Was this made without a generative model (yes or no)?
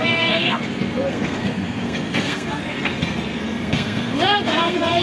no